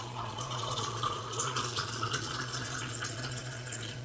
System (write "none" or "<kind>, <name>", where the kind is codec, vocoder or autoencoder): vocoder, Vocos